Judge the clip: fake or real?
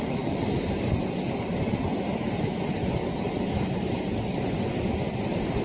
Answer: real